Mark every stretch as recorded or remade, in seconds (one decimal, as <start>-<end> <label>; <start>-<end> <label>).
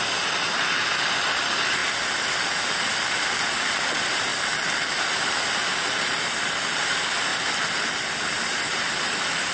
0.0-1.8 remade; 1.8-2.3 recorded; 2.3-4.3 remade; 4.3-4.9 recorded; 4.9-7.3 remade; 7.3-8.3 recorded; 8.3-9.5 remade